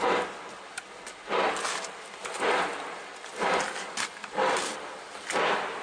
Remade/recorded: recorded